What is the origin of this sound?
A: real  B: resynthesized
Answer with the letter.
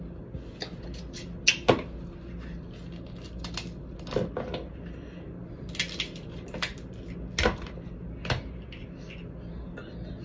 A